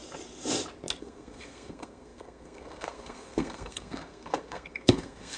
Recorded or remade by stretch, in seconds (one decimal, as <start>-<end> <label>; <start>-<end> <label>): 0.0-1.0 recorded; 1.0-5.4 remade